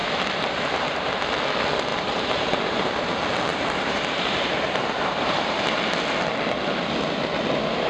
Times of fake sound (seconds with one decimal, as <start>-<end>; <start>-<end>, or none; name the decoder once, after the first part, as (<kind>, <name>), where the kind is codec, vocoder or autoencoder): 0.0-1.1 (vocoder, BigVGAN v2); 1.9-3.1; 3.5-5.6